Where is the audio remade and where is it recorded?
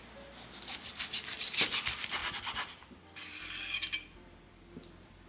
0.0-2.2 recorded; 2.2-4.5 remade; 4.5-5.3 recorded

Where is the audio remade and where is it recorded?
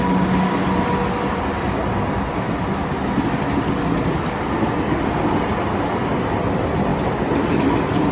0.0-8.1 recorded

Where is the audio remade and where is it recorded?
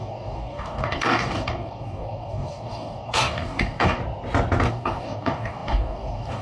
0.0-4.0 remade; 4.0-4.7 recorded; 4.7-6.4 remade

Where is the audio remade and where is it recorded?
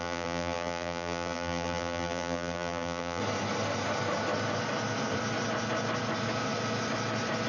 0.0-3.2 remade; 3.2-7.5 recorded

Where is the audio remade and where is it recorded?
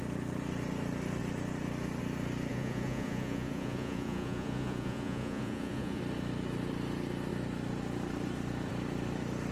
0.0-2.5 recorded; 2.5-6.0 remade; 6.0-9.5 recorded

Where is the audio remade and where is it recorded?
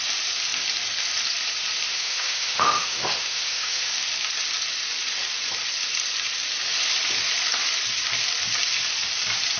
0.0-1.9 recorded; 1.9-3.9 remade; 3.9-9.6 recorded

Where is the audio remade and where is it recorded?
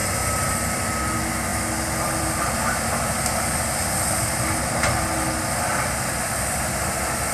0.0-0.5 remade; 0.5-7.3 recorded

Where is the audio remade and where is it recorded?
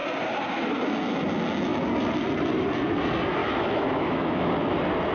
0.0-3.4 recorded; 3.4-4.5 remade; 4.5-5.1 recorded